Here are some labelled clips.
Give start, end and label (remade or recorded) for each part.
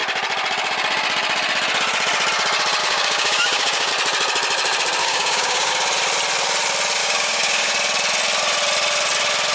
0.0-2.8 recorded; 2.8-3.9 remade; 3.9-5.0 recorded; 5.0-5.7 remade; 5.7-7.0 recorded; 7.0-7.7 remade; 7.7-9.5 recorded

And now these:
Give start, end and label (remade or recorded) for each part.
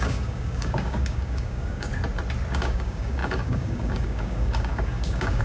0.0-1.9 remade; 1.9-2.5 recorded; 2.5-5.4 remade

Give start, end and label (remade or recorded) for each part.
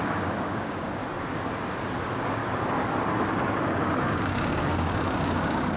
0.0-1.0 remade; 1.0-2.0 recorded; 2.0-2.4 remade; 2.4-4.0 recorded; 4.0-5.8 remade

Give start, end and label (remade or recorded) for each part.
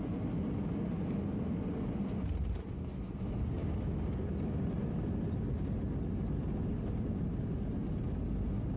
0.0-8.8 recorded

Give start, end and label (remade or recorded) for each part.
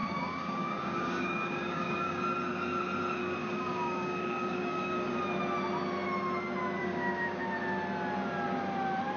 0.0-2.2 remade; 2.2-3.4 recorded; 3.4-5.2 remade; 5.2-6.8 recorded; 6.8-7.4 remade; 7.4-9.2 recorded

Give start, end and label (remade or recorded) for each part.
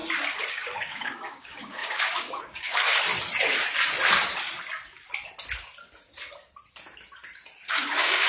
0.0-0.5 recorded; 0.5-3.1 remade; 3.1-7.7 recorded; 7.7-8.3 remade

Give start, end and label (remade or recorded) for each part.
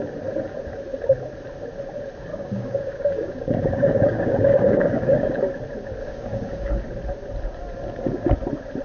0.0-2.3 recorded; 2.3-5.4 remade; 5.4-6.0 recorded; 6.0-6.7 remade; 6.7-8.8 recorded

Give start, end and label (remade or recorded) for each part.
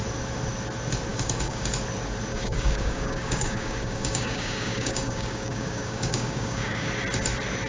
0.0-1.1 recorded; 1.1-1.7 remade; 1.7-2.3 recorded; 2.3-6.9 remade; 6.9-7.7 recorded